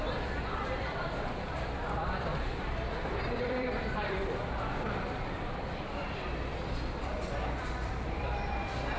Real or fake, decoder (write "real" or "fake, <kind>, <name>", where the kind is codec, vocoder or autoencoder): fake, vocoder, BigVGAN v2